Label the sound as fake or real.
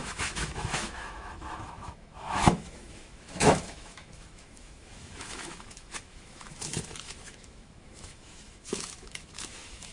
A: fake